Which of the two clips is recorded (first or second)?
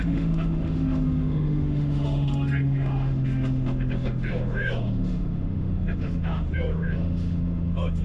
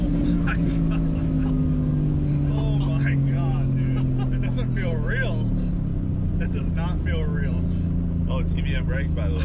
second